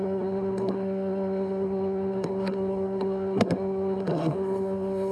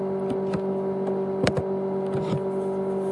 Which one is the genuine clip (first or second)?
second